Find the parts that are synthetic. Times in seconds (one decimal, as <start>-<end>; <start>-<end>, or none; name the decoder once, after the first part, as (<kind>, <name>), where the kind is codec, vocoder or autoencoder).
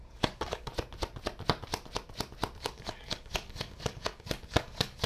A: 0.0-0.7 (codec, DAC); 2.6-5.1